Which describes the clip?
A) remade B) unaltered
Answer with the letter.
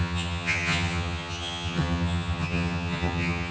A